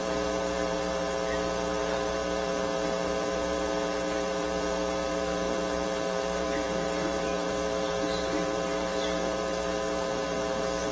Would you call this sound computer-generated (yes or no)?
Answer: yes